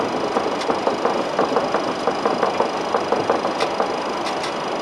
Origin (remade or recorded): recorded